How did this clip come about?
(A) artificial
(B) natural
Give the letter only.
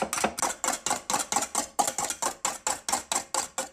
B